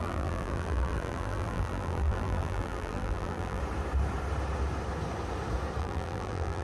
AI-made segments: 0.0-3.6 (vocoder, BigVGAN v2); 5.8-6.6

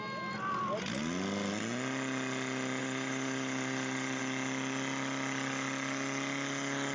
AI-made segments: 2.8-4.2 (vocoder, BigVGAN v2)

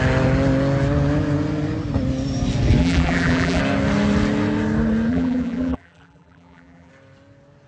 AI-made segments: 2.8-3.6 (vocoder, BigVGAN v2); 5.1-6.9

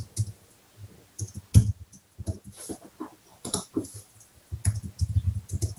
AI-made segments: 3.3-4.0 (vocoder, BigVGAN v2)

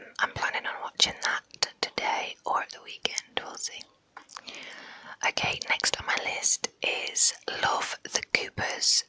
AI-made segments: none